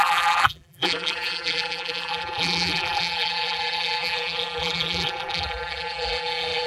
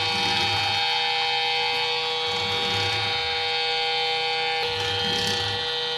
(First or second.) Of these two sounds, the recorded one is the second